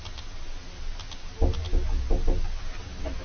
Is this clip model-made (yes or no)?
no